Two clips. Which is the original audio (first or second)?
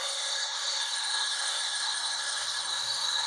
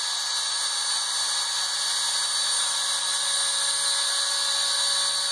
second